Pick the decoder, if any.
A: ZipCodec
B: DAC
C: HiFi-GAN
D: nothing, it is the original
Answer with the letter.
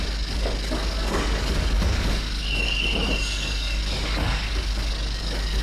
B